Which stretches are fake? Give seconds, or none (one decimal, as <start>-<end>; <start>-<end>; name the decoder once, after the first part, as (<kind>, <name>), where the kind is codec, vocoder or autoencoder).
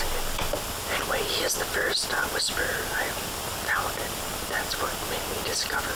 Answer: none